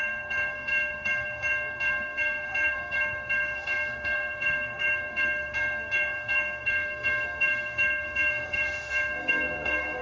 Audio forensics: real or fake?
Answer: fake